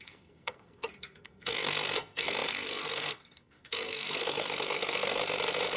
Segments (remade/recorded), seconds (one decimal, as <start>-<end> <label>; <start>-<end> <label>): 0.0-5.2 remade; 5.2-5.8 recorded